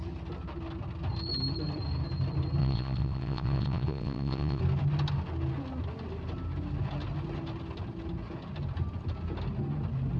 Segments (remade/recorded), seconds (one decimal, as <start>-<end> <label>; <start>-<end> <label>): 0.0-2.6 recorded; 2.6-4.6 remade; 4.6-10.2 recorded